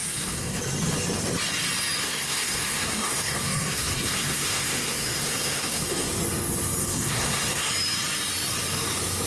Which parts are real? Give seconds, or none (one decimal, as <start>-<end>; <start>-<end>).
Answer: 0.6-2.0; 6.1-6.8; 7.7-9.3

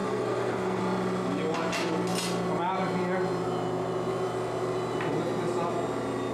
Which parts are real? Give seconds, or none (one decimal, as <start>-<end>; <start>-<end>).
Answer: 0.8-6.3